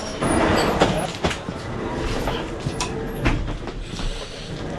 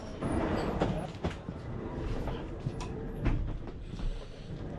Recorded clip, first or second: first